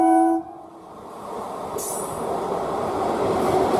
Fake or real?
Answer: fake